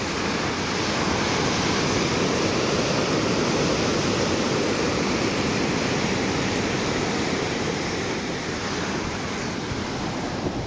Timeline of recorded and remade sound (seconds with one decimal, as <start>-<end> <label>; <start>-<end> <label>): 0.0-4.0 recorded; 4.0-7.7 remade; 7.7-10.7 recorded